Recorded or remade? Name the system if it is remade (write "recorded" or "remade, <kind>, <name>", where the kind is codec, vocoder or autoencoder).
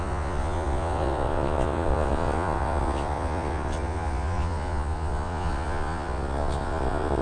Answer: remade, vocoder, Vocos